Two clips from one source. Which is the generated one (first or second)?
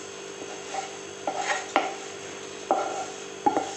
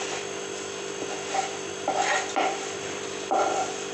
second